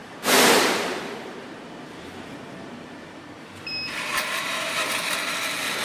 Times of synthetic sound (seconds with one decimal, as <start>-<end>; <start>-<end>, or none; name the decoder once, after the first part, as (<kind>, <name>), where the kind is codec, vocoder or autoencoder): 0.0-3.2 (vocoder, BigVGAN v2); 4.1-4.9